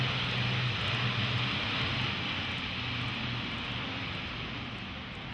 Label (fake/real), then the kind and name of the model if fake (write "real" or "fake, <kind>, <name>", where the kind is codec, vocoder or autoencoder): real